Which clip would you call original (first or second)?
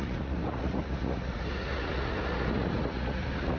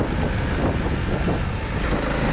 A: second